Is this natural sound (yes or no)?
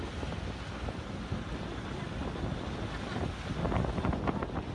yes